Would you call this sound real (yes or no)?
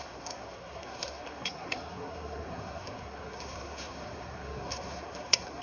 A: no